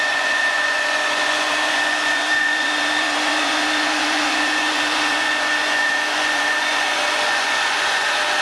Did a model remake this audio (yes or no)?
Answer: yes